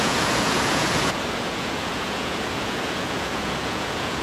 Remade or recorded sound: remade